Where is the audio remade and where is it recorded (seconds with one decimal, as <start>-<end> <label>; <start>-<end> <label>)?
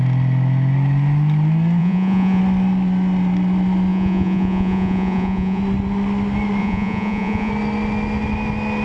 0.0-1.8 recorded; 1.8-2.4 remade; 2.4-3.9 recorded; 3.9-5.6 remade; 5.6-6.6 recorded; 6.6-7.5 remade; 7.5-8.8 recorded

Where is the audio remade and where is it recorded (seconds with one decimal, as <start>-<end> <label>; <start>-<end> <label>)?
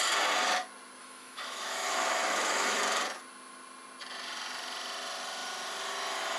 0.0-1.0 recorded; 1.0-2.8 remade; 2.8-6.4 recorded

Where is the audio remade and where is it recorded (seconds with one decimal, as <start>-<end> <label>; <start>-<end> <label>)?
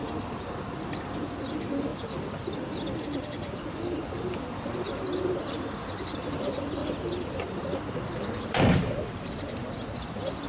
0.0-0.5 remade; 0.5-1.9 recorded; 1.9-4.0 remade; 4.0-6.8 recorded; 6.8-8.9 remade; 8.9-10.5 recorded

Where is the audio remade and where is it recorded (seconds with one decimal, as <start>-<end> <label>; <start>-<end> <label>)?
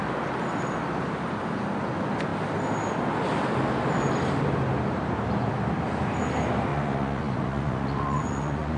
0.0-6.7 recorded; 6.7-8.8 remade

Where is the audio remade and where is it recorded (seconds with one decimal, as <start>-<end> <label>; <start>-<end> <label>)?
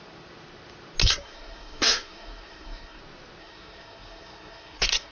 0.0-1.0 recorded; 1.0-3.0 remade; 3.0-3.4 recorded; 3.4-5.1 remade